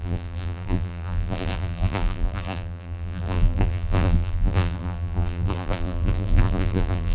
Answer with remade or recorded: remade